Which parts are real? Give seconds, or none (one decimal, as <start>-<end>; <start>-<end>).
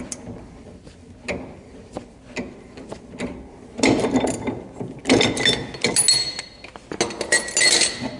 0.0-8.2